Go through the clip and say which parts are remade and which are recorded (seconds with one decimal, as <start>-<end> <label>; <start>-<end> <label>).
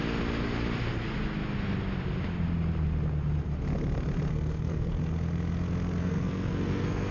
0.0-4.3 recorded; 4.3-5.0 remade; 5.0-6.0 recorded; 6.0-7.1 remade